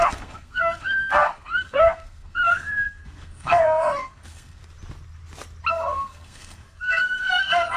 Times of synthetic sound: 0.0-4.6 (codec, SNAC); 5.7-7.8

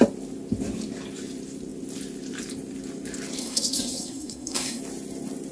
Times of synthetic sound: 3.4-4.8 (codec, SNAC)

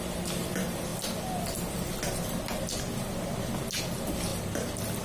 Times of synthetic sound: 4.3-5.0 (vocoder, BigVGAN v2)

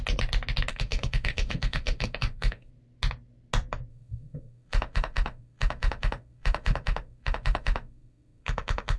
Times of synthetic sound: 0.7-2.7 (autoencoder, DAC-VAE); 3.9-9.0

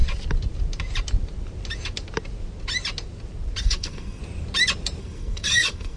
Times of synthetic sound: 3.6-4.2 (codec, SNAC); 5.0-6.0

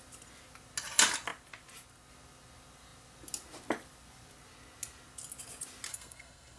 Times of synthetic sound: 5.9-6.6 (codec, SNAC)

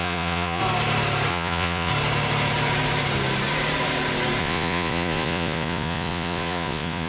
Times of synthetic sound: 0.0-0.6 (vocoder, Vocos); 1.3-1.9; 4.4-7.1